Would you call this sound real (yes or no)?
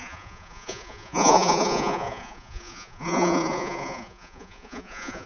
no